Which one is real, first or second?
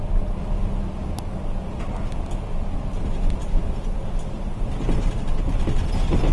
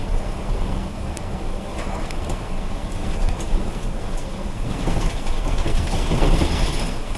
first